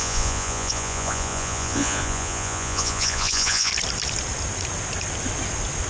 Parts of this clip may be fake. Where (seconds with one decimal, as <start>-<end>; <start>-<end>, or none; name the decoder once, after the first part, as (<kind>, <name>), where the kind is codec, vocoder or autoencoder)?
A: 0.0-3.7 (vocoder, Vocos)